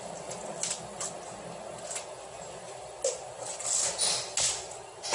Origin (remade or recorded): recorded